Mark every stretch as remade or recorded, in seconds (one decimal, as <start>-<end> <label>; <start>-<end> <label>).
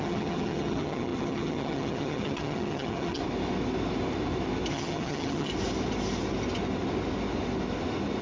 0.0-3.2 remade; 3.2-4.7 recorded; 4.7-5.5 remade; 5.5-8.2 recorded